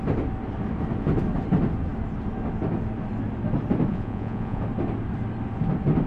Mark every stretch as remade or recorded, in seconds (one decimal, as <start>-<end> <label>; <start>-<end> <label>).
0.0-3.9 recorded; 3.9-4.6 remade; 4.6-6.1 recorded